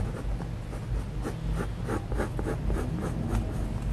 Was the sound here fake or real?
real